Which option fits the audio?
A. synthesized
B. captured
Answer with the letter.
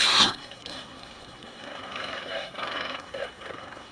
A